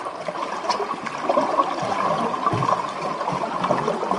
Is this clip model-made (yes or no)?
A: no